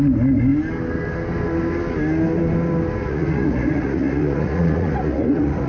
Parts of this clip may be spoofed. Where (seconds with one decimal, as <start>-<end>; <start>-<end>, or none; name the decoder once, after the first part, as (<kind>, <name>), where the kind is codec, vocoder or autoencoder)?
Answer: 3.0-5.7 (vocoder, Vocos)